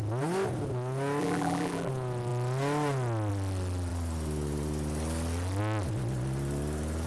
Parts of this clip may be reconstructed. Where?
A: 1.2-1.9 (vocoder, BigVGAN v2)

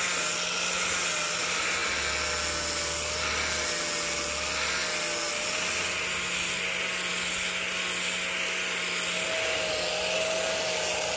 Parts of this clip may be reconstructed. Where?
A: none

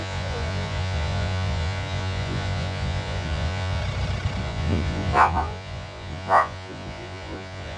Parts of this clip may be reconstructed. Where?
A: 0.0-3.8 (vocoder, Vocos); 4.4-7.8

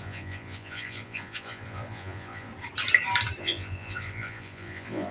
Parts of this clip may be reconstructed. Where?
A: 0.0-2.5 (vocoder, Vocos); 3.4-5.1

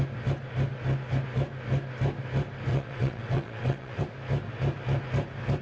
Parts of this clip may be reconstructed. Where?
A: 2.7-4.0 (vocoder, WaveNeXt)

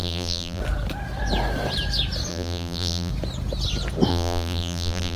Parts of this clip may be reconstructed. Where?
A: 0.0-0.6 (vocoder, BigVGAN v2); 2.3-3.1; 4.1-5.2